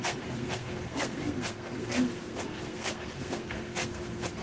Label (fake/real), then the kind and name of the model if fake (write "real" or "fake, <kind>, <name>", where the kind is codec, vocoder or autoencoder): fake, codec, SNAC